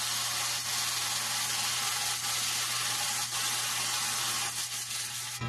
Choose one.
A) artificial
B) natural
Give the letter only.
B